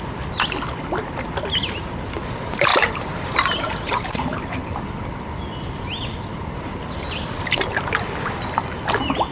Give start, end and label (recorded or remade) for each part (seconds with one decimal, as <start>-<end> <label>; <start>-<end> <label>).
0.0-2.7 recorded; 2.7-4.8 remade; 4.8-9.3 recorded